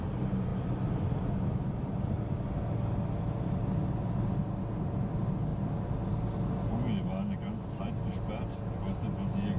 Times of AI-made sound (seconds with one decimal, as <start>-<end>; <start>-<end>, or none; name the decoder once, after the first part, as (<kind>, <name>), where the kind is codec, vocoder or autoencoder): none